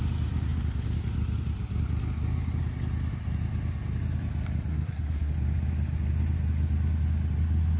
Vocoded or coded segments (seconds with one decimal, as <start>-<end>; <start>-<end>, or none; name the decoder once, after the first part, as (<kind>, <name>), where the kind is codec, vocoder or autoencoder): 4.7-5.3 (codec, SNAC)